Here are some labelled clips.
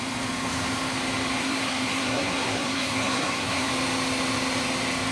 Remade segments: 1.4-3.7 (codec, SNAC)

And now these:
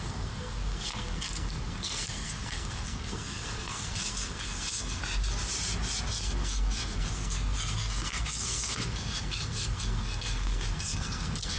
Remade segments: 0.0-5.0 (codec, SNAC); 6.1-11.6

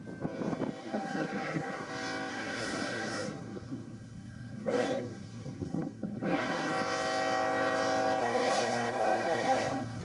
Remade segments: 0.8-1.9 (codec, SNAC); 2.3-6.7; 8.2-10.0

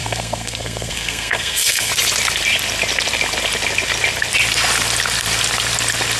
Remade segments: 0.0-1.9 (codec, SNAC)

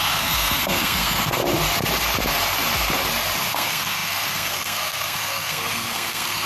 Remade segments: 0.0-1.4 (codec, SNAC); 3.5-6.5

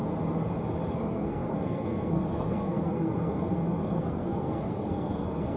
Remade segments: 0.9-5.6 (codec, SNAC)

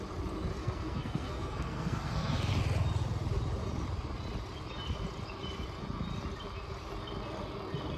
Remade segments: 0.6-2.5 (codec, SNAC)